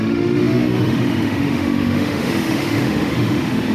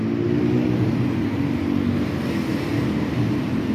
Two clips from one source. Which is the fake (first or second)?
first